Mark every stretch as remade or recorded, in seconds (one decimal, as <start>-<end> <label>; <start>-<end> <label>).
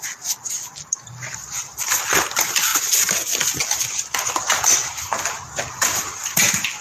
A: 0.0-6.8 recorded